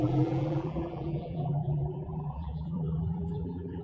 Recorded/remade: remade